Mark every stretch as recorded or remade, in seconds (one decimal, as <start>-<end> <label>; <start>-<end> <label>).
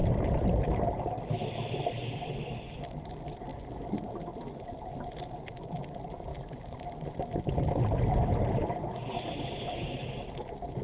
0.0-10.8 recorded